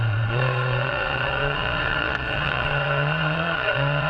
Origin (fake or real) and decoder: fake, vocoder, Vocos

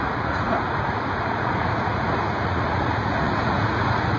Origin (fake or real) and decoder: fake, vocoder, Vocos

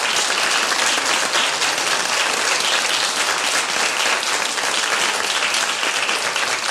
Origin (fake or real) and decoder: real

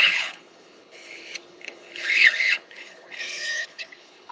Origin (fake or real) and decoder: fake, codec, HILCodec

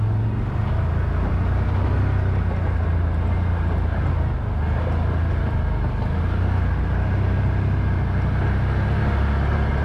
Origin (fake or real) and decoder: real